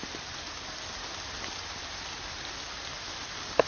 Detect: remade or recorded recorded